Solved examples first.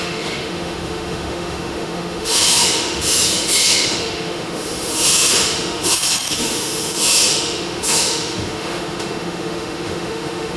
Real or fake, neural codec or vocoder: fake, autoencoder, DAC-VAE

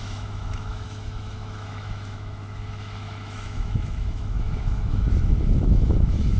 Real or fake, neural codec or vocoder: fake, autoencoder, DAC-VAE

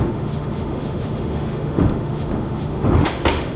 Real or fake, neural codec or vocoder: fake, autoencoder, DAC-VAE